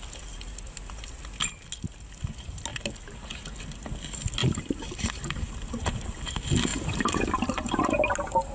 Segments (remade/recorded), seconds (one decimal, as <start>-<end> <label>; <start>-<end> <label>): 0.0-4.4 recorded; 4.4-5.7 remade; 5.7-6.7 recorded; 6.7-7.9 remade; 7.9-8.5 recorded